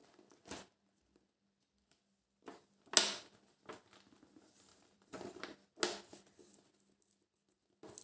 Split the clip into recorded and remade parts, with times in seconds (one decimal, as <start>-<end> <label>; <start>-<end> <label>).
0.0-4.7 recorded; 4.7-5.4 remade; 5.4-8.0 recorded